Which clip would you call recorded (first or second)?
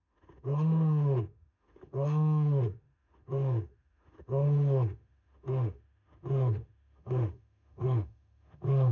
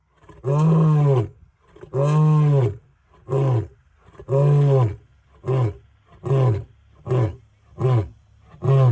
second